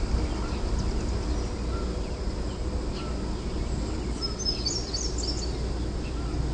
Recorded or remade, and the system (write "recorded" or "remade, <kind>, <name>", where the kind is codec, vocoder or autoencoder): recorded